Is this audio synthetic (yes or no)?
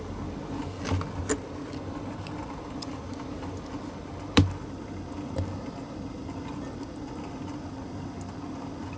no